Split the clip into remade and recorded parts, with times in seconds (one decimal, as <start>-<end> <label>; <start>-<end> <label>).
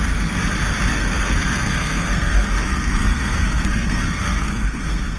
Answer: 0.0-0.4 remade; 0.4-0.9 recorded; 0.9-5.2 remade